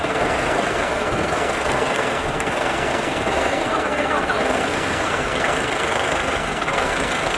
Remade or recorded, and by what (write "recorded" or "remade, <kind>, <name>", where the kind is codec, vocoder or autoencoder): remade, codec, SNAC